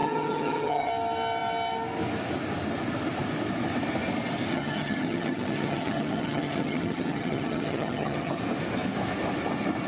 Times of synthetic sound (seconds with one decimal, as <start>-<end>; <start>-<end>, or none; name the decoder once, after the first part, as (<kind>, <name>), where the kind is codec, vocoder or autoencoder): 0.0-0.9 (vocoder, HiFi-GAN); 4.5-8.4

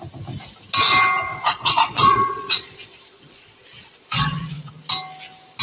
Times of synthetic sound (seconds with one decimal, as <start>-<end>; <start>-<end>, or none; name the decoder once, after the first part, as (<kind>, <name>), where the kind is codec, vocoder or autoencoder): 1.3-4.7 (vocoder, Vocos)